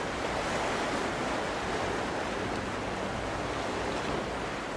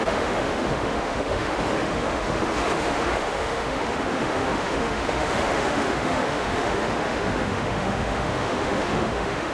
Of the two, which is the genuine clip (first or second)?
first